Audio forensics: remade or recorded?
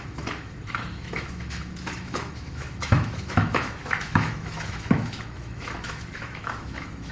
remade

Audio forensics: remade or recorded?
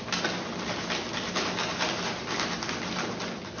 recorded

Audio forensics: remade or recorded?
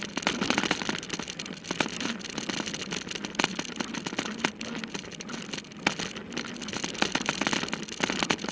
recorded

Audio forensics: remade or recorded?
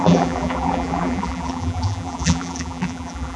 remade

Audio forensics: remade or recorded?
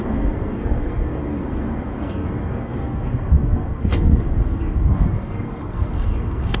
remade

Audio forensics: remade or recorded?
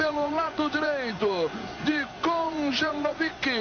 remade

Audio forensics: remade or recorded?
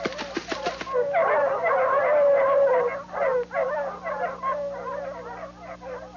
recorded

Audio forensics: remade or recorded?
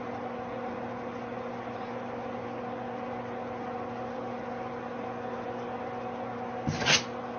recorded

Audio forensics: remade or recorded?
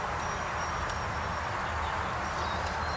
recorded